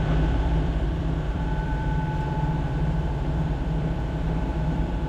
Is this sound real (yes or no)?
no